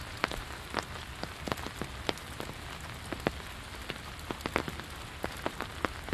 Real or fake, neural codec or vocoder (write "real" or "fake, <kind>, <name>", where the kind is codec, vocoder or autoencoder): real